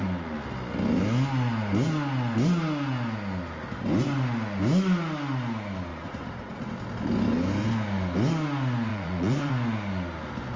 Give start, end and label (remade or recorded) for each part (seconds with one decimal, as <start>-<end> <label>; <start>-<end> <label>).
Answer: 0.0-5.9 recorded; 5.9-6.7 remade; 6.7-8.9 recorded; 8.9-9.5 remade; 9.5-10.6 recorded